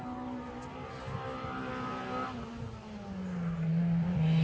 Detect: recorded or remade recorded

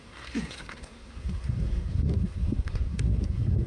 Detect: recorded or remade remade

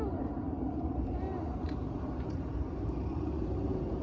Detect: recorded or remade remade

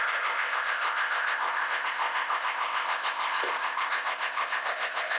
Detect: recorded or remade remade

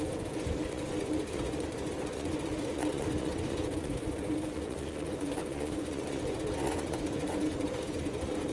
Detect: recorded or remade remade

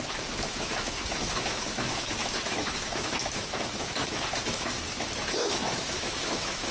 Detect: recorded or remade remade